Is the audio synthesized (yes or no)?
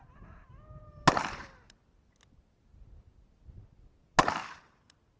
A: no